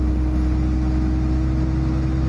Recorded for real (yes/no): yes